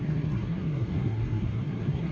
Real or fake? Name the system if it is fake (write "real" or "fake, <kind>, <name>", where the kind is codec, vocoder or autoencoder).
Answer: fake, codec, SNAC